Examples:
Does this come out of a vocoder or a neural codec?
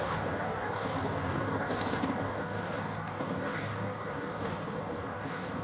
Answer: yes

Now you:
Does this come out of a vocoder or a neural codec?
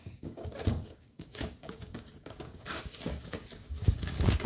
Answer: yes